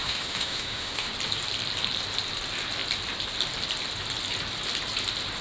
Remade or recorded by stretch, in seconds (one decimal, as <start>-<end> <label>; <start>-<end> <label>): 0.0-1.1 remade; 1.1-5.4 recorded